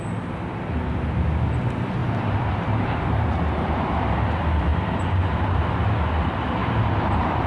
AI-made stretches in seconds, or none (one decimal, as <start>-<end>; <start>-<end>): 2.0-3.9; 4.7-5.6; 6.6-7.5